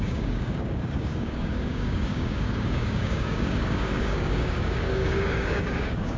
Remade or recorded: remade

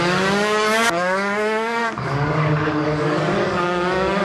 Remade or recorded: remade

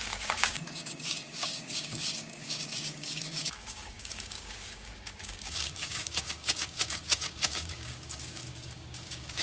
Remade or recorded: remade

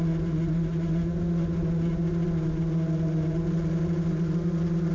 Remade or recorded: recorded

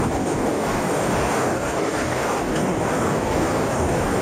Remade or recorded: remade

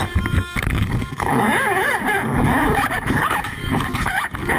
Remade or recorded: remade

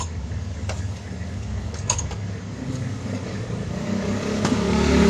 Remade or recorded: remade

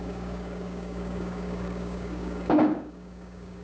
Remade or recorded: remade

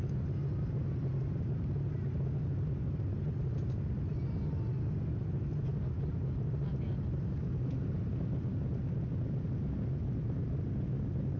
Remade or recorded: recorded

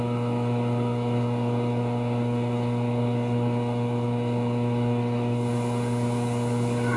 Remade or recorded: remade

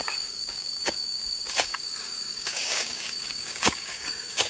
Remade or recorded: remade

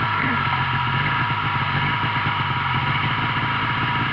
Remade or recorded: recorded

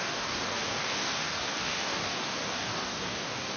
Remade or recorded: remade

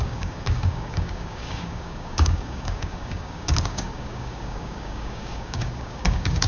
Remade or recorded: remade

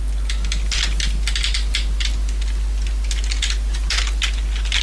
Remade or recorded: recorded